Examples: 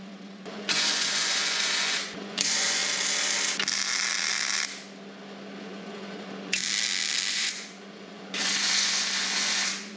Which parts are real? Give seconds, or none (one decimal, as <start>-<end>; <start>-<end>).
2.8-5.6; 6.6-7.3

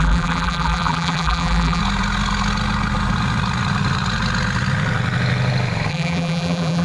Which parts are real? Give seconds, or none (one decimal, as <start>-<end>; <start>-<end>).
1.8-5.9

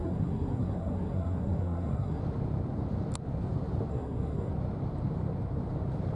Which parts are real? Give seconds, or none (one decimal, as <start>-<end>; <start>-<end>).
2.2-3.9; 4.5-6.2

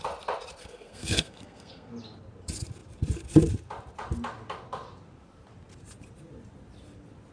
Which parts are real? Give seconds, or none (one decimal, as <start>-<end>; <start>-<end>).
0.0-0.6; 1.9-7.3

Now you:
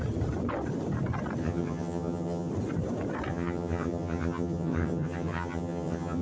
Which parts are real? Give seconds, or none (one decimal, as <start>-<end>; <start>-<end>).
0.0-1.4; 2.5-3.3

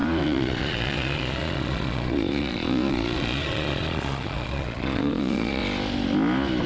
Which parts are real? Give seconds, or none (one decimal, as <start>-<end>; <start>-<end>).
5.6-6.7